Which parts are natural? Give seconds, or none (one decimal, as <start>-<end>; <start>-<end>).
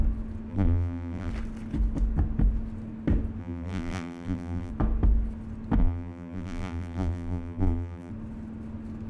0.0-0.5; 1.3-3.4; 4.7-5.8; 8.1-9.1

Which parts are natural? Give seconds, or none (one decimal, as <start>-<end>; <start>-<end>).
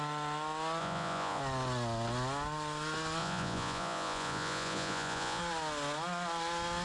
0.0-0.8; 1.4-3.2; 5.4-6.8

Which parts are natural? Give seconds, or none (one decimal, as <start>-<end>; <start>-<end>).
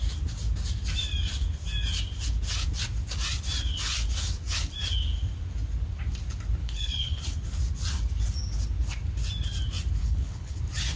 0.0-6.6; 7.2-10.0; 10.6-11.0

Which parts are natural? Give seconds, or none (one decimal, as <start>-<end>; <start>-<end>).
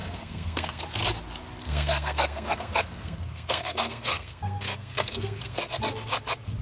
0.8-1.6; 5.6-6.6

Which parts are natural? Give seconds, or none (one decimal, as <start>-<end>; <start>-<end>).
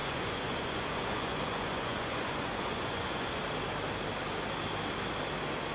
3.4-5.7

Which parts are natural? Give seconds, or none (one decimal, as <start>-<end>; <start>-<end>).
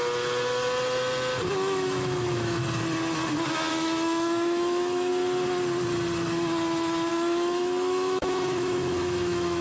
0.0-1.5; 2.6-3.7; 5.1-7.1